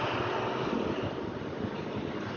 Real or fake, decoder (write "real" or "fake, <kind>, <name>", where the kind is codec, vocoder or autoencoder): real